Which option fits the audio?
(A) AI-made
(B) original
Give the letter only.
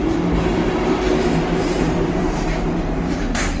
A